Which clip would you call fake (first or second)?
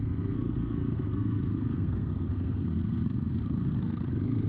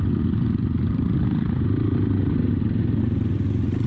first